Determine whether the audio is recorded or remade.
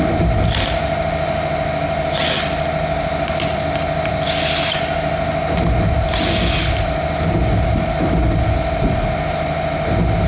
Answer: recorded